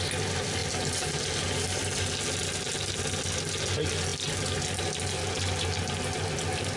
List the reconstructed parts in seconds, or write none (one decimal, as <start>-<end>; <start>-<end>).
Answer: none